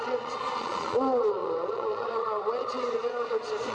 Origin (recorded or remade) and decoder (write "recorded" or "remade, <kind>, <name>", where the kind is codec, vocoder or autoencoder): remade, vocoder, Vocos